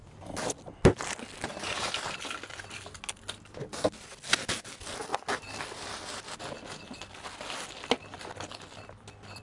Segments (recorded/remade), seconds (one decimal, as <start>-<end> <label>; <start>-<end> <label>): 0.0-9.4 recorded